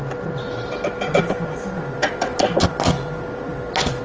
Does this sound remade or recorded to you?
recorded